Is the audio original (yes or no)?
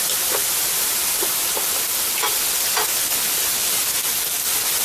yes